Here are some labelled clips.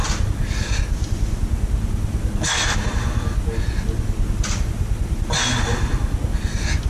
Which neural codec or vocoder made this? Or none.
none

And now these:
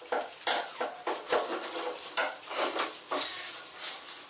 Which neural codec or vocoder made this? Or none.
none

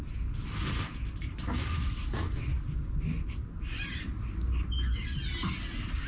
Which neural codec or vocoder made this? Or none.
none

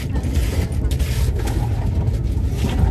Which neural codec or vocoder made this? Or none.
none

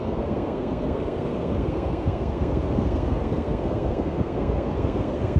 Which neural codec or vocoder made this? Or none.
codec, SNAC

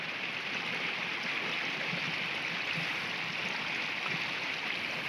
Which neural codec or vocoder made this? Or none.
none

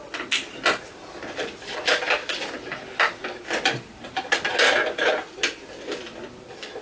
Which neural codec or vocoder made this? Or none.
none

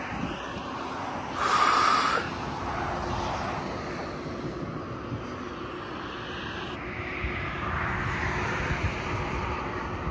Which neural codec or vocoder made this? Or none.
none